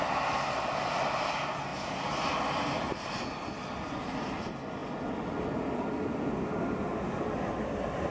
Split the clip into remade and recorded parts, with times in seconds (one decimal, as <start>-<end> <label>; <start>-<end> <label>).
0.0-8.1 recorded